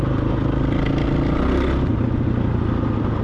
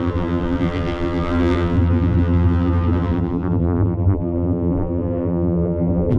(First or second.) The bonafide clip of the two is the first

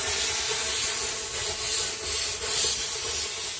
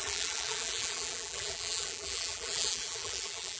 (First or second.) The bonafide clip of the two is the first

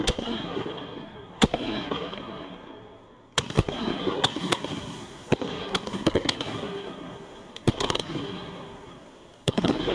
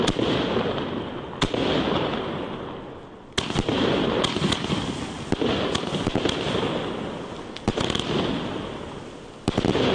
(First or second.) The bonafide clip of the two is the second